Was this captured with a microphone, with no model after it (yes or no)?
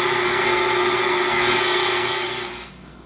no